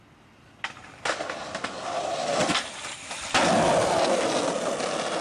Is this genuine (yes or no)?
yes